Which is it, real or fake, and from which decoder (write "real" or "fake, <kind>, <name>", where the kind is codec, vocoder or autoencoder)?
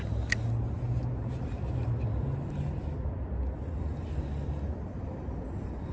real